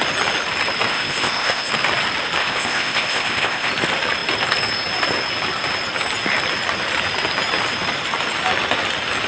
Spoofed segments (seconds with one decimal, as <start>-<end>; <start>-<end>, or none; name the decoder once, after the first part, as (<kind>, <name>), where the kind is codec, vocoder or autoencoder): 0.9-1.7 (codec, ZipCodec); 2.4-3.7